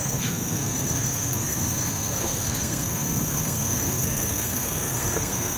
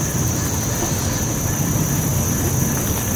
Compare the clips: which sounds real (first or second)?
second